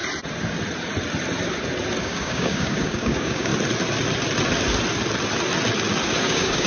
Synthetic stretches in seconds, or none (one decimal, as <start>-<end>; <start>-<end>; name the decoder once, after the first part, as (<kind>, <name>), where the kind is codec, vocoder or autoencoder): 2.0-3.5 (codec, DAC); 6.2-6.7